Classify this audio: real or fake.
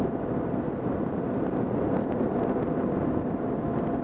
real